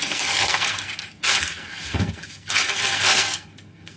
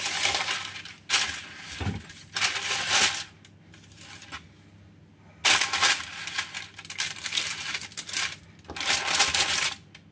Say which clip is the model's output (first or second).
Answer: first